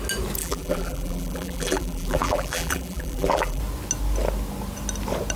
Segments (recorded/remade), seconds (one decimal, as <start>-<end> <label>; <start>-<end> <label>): 0.0-0.4 recorded; 0.4-3.6 remade; 3.6-5.4 recorded